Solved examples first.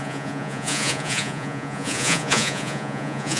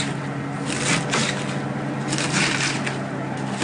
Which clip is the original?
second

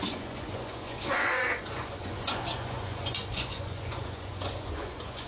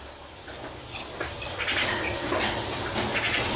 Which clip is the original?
second